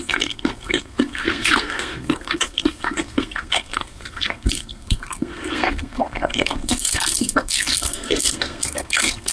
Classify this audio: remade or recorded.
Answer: remade